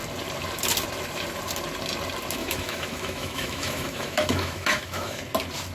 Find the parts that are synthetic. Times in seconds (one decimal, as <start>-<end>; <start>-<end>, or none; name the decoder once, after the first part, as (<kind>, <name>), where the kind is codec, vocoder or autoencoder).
2.4-5.2 (autoencoder, DAC-VAE)